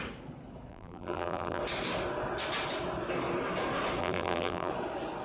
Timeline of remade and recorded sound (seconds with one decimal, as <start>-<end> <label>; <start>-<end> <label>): 0.0-0.7 recorded; 0.7-1.6 remade; 1.6-4.0 recorded; 4.0-4.7 remade; 4.7-5.2 recorded